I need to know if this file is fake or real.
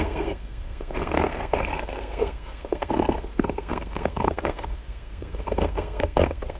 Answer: fake